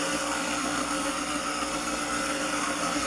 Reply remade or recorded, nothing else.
remade